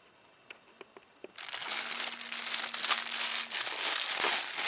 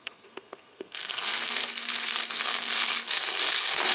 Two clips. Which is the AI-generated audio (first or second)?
second